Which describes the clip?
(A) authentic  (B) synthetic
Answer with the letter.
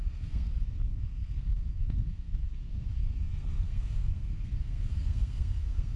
B